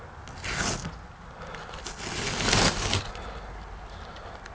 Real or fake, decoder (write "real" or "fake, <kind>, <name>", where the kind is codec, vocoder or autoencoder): real